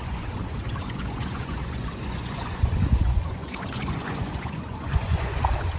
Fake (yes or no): yes